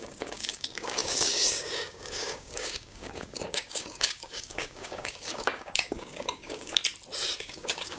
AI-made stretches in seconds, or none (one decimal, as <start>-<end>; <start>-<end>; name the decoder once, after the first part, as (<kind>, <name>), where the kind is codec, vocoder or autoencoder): 0.0-6.8 (codec, DAC); 7.4-8.0